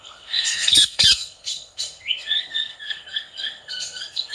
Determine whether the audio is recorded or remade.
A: remade